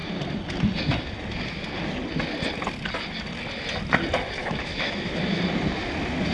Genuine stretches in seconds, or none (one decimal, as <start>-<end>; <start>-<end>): 0.0-4.4; 5.4-6.3